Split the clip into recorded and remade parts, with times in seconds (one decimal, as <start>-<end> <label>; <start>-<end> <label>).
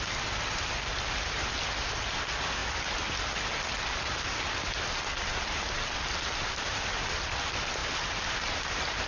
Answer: 0.0-9.1 recorded